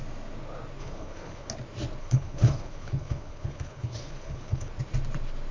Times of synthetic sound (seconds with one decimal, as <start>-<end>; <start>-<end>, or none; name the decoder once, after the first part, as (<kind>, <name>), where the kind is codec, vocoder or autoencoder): 0.8-1.5 (codec, HILCodec); 2.0-4.7